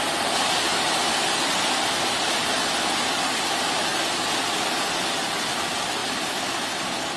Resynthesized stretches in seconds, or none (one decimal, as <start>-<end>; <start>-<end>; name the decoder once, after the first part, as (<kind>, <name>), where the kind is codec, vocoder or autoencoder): 0.7-2.1 (vocoder, BigVGAN v2); 3.9-5.6; 6.0-6.6

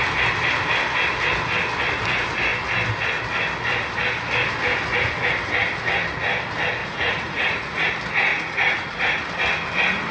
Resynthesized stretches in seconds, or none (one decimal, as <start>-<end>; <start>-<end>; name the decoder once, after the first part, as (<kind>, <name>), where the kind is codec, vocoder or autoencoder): 6.8-7.9 (vocoder, Vocos); 8.3-9.2